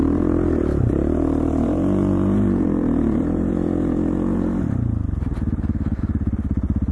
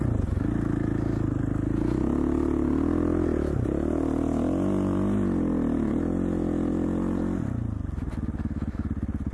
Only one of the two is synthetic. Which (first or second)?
first